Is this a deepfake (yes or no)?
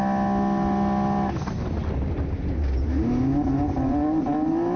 no